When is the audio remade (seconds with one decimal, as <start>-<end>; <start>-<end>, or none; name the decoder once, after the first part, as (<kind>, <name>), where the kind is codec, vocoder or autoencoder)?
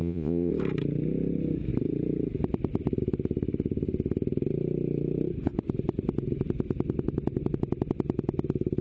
0.0-0.5 (vocoder, Vocos)